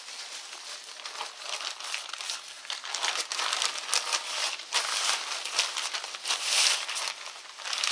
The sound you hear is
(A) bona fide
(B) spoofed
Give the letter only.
A